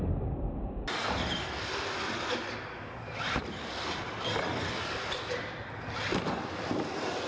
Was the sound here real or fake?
real